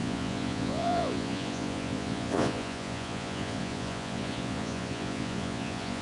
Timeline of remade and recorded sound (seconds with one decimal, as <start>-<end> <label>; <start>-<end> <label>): 0.0-6.0 remade